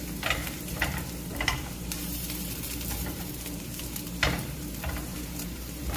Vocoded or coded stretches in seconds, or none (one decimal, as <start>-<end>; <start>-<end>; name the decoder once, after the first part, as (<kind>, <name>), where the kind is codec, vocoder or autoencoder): 0.0-6.0 (vocoder, BigVGAN v2)